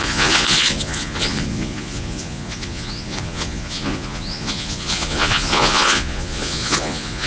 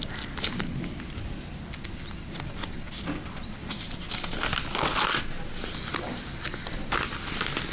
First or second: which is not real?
first